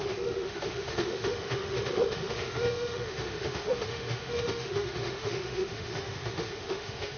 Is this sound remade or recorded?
remade